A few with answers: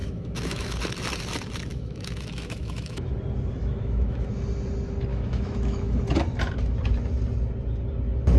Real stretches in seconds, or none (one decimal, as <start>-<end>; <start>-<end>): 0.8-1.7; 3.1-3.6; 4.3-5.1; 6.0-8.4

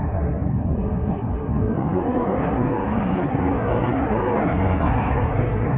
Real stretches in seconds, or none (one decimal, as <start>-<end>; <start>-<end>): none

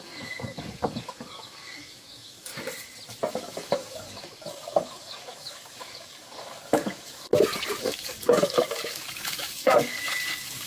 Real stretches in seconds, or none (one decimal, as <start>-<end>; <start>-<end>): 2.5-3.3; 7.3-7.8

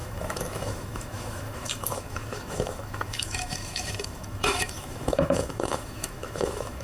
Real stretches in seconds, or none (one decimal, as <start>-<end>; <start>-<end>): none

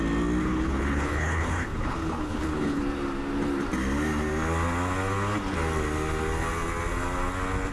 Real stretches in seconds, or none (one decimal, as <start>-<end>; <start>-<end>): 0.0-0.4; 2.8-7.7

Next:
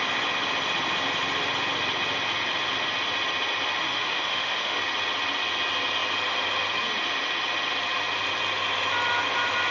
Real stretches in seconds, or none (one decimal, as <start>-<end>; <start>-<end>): 0.0-3.8; 4.8-9.7